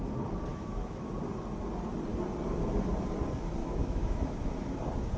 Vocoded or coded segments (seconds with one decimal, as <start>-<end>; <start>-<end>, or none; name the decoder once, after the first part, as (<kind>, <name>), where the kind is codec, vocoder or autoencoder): 0.5-1.1 (autoencoder, DAC-VAE); 3.6-4.8